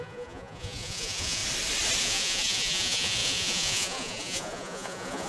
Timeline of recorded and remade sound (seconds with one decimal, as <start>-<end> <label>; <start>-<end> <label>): 0.0-1.4 remade; 1.4-2.0 recorded; 2.0-5.3 remade